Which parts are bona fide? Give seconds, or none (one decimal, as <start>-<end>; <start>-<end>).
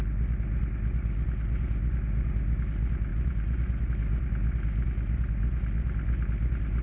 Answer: 0.0-3.1; 3.8-6.8